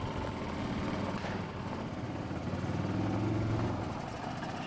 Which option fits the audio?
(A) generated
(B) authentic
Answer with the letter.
B